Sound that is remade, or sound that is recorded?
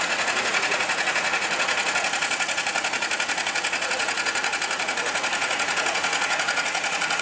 remade